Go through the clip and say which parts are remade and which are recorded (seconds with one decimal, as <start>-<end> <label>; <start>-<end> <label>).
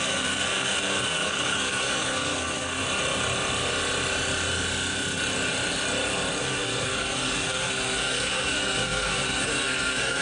0.0-2.8 remade; 2.8-6.4 recorded; 6.4-10.2 remade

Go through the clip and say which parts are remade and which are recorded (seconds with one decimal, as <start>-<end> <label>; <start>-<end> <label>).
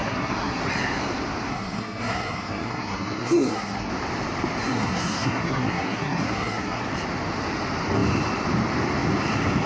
0.0-0.6 remade; 0.6-1.5 recorded; 1.5-3.9 remade; 3.9-4.6 recorded; 4.6-6.8 remade; 6.8-9.7 recorded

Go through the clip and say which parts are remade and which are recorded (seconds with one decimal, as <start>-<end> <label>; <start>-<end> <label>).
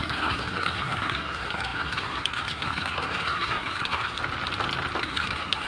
0.0-4.2 remade; 4.2-5.0 recorded; 5.0-5.7 remade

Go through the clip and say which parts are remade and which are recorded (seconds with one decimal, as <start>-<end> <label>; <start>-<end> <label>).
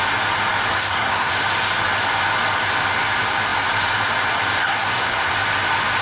0.0-0.7 recorded; 0.7-1.3 remade; 1.3-4.6 recorded; 4.6-5.3 remade; 5.3-6.0 recorded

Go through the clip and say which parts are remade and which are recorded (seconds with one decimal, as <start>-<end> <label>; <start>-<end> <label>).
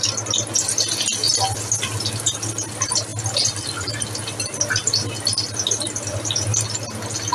0.0-7.3 recorded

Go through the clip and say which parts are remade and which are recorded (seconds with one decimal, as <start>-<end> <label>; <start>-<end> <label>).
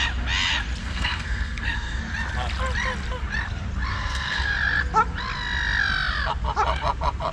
0.0-0.8 recorded; 0.8-2.0 remade; 2.0-3.9 recorded; 3.9-4.5 remade; 4.5-7.3 recorded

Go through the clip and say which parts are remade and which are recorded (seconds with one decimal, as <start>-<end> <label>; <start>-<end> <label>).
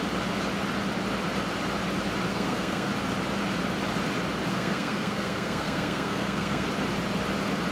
0.0-2.3 recorded; 2.3-2.9 remade; 2.9-4.5 recorded; 4.5-6.7 remade; 6.7-7.7 recorded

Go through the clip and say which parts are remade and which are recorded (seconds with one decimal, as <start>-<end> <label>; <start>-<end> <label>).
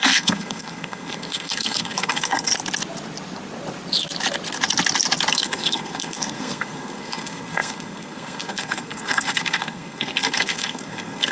0.0-2.5 remade; 2.5-5.3 recorded; 5.3-11.3 remade